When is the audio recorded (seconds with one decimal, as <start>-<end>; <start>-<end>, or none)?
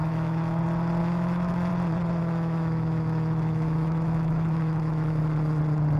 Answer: 0.6-1.0; 1.7-2.2; 5.2-6.0